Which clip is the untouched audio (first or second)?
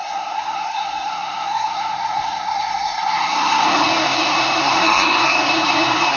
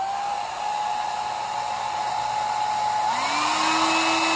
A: second